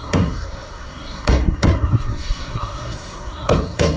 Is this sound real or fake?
fake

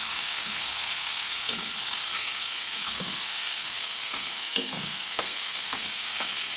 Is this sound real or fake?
fake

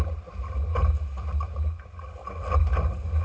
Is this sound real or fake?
real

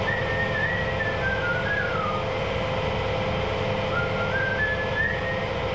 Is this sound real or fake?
real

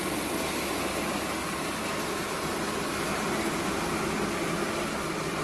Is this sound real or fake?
real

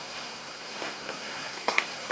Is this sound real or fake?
fake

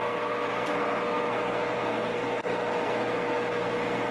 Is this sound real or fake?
fake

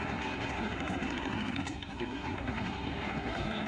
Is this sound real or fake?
fake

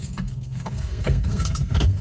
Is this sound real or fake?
fake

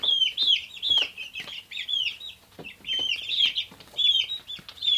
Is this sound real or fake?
real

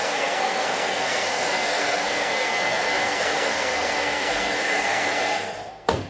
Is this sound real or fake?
fake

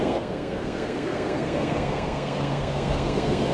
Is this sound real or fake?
fake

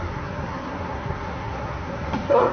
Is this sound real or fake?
fake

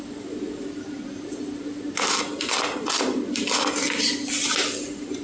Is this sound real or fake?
real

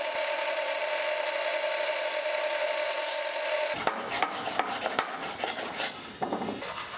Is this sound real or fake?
real